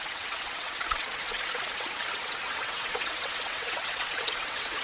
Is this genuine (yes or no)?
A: no